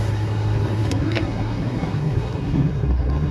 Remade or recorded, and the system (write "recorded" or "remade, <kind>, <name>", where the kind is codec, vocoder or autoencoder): remade, codec, SNAC